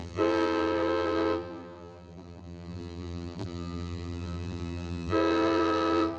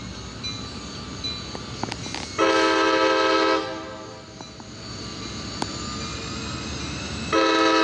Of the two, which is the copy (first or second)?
first